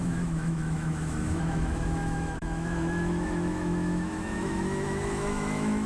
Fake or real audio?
fake